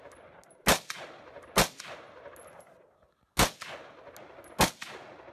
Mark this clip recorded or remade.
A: recorded